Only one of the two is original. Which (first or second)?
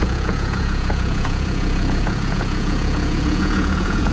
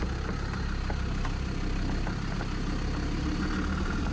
second